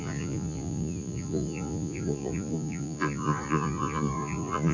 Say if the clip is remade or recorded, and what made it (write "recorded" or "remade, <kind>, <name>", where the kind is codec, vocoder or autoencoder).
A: remade, vocoder, Vocos